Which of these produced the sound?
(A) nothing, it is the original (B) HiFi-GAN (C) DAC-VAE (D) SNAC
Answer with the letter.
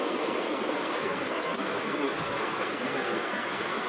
D